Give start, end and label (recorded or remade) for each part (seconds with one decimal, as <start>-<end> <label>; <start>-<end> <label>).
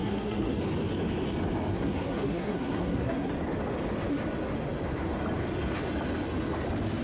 0.0-0.6 remade; 0.6-1.7 recorded; 1.7-3.3 remade; 3.3-7.0 recorded